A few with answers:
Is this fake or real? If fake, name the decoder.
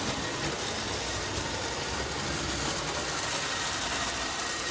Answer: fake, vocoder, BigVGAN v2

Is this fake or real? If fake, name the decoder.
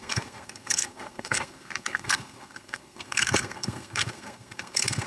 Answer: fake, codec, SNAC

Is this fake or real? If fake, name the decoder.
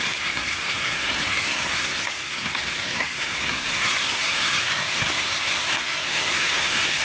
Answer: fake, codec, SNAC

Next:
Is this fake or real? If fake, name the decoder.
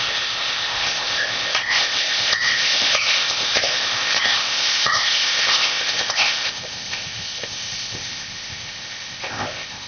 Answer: fake, codec, ZipCodec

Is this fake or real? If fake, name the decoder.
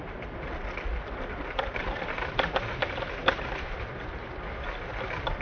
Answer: real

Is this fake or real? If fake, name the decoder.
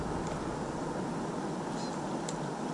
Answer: real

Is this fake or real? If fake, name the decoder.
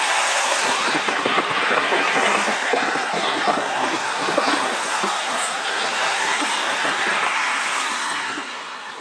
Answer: fake, codec, SNAC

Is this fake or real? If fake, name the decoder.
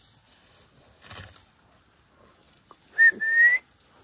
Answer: real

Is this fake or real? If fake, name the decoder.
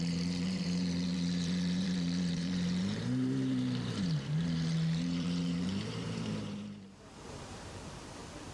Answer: fake, vocoder, BigVGAN v2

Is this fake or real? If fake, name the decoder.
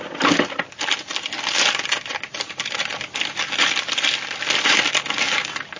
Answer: real